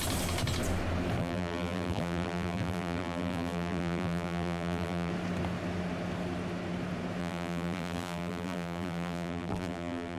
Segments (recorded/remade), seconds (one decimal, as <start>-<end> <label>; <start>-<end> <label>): 0.0-1.2 recorded; 1.2-5.1 remade; 5.1-7.2 recorded; 7.2-10.2 remade